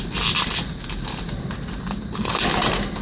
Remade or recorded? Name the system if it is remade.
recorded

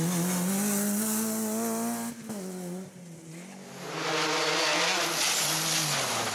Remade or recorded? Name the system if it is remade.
recorded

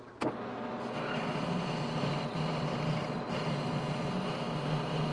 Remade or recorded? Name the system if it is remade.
recorded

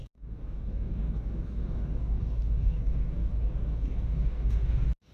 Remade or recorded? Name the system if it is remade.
remade, codec, DAC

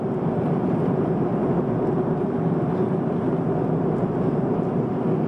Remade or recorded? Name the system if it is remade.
recorded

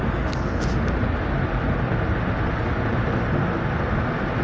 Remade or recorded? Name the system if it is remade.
recorded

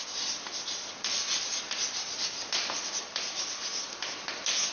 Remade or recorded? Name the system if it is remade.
recorded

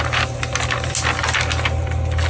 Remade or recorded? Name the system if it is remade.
recorded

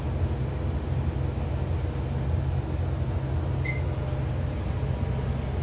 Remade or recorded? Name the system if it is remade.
recorded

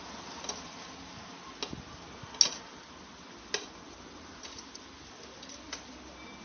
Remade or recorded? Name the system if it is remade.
recorded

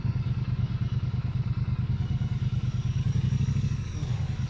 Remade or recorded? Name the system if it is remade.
remade, codec, DAC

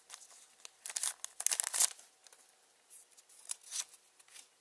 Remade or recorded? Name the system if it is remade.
recorded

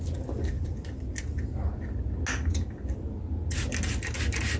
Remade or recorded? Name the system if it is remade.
recorded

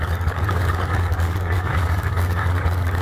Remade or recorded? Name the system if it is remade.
remade, codec, DAC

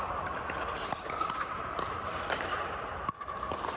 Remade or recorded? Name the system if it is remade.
recorded